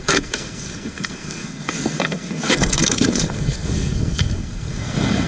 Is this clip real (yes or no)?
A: no